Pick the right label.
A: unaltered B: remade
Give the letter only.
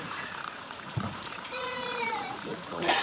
B